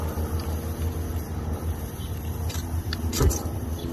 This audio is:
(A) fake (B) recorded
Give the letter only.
A